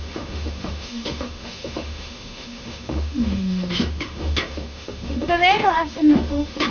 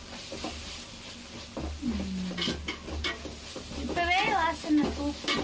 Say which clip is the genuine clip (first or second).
second